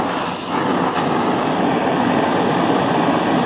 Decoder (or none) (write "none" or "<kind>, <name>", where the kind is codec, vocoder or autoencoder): none